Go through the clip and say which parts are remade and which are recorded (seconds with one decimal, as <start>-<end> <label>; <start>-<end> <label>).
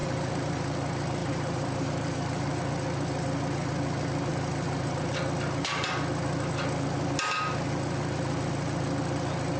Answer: 0.0-0.6 remade; 0.6-1.2 recorded; 1.2-2.6 remade; 2.6-4.3 recorded; 4.3-5.1 remade; 5.1-9.6 recorded